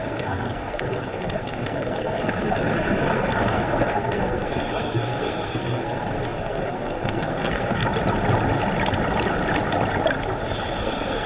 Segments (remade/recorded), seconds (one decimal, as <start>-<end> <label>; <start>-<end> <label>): 0.0-7.8 remade; 7.8-10.8 recorded; 10.8-11.3 remade